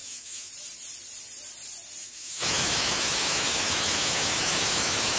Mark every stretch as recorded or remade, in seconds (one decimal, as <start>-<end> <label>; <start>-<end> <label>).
0.0-0.5 remade; 0.5-2.0 recorded; 2.0-5.2 remade